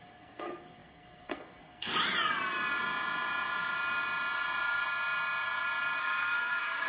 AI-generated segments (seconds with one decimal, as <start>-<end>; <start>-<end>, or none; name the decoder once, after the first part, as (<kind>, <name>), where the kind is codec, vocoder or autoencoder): 0.0-1.9 (codec, SNAC); 6.0-6.9